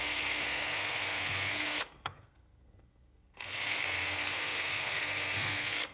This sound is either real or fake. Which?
fake